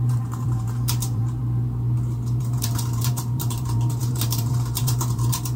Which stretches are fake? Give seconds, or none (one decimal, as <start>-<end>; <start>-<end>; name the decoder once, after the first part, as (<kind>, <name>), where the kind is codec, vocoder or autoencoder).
0.0-1.4 (vocoder, BigVGAN v2); 2.4-5.6